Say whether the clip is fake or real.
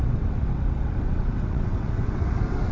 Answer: fake